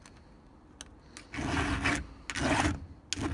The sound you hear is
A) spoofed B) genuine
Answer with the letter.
B